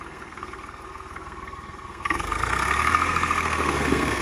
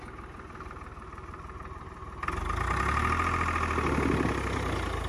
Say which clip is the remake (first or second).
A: first